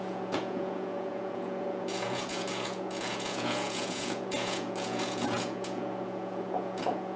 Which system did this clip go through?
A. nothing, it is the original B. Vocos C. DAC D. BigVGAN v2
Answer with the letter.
B